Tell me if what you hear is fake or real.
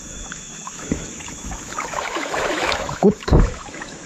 fake